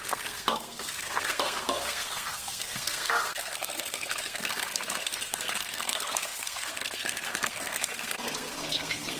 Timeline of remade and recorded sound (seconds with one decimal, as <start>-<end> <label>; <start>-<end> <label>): 0.0-9.2 remade